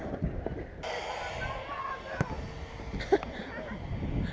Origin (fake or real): real